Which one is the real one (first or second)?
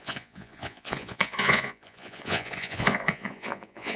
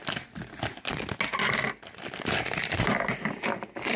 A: second